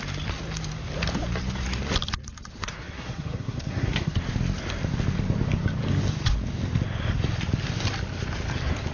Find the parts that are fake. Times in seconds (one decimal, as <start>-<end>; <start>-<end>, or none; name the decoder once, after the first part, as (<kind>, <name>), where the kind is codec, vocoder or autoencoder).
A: 2.6-4.2 (codec, SNAC)